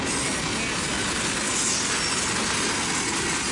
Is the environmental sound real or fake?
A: real